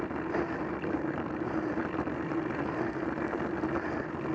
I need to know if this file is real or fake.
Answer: real